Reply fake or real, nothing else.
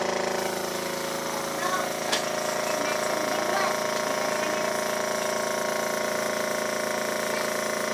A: real